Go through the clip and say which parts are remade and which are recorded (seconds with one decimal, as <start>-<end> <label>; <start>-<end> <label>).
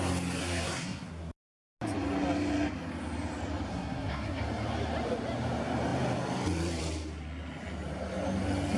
0.0-0.4 recorded; 0.4-1.1 remade; 1.1-3.7 recorded; 3.7-4.4 remade; 4.4-8.8 recorded